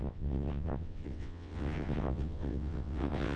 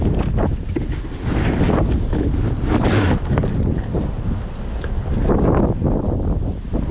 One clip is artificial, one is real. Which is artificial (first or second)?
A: first